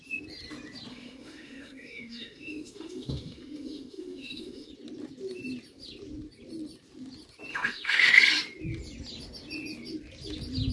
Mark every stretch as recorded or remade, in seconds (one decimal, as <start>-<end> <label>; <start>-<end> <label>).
0.0-0.9 recorded; 0.9-4.7 remade; 4.7-7.5 recorded; 7.5-8.2 remade; 8.2-10.7 recorded